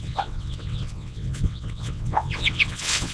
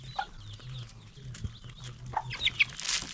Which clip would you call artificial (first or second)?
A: first